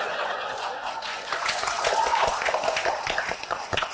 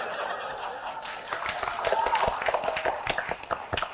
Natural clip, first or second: second